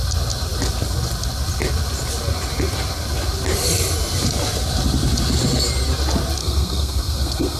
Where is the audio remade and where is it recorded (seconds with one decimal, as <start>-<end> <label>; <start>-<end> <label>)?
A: 0.0-6.4 recorded; 6.4-7.6 remade